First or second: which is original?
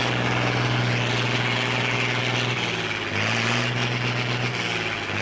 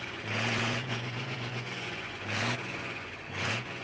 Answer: first